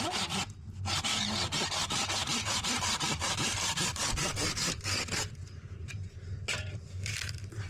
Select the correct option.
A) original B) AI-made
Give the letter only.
B